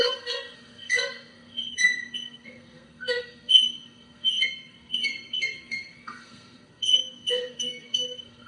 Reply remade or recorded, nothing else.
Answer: remade